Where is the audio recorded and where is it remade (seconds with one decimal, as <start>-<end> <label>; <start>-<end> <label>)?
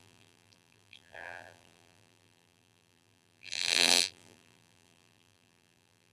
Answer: 0.0-6.1 remade